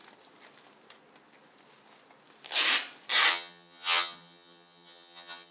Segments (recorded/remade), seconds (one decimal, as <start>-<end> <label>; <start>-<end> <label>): 0.0-3.3 recorded; 3.3-5.5 remade